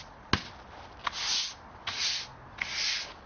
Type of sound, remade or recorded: recorded